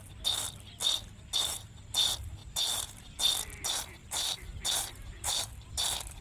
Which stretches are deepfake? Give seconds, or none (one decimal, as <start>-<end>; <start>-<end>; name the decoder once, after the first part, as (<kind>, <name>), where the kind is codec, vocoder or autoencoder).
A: 2.4-3.2 (vocoder, BigVGAN v2); 4.0-5.8